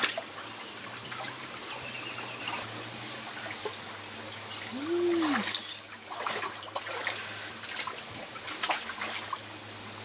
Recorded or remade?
recorded